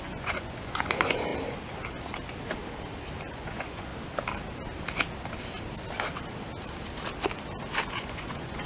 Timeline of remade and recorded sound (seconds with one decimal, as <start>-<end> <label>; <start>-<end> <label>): 0.0-1.3 remade; 1.3-3.3 recorded; 3.3-3.9 remade; 3.9-7.9 recorded; 7.9-8.7 remade